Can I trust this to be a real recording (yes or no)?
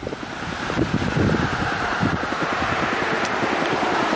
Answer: yes